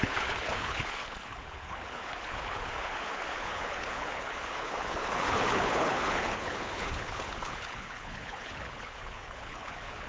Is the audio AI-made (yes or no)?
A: yes